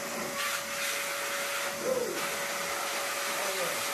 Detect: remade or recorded recorded